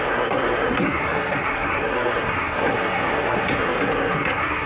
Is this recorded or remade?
remade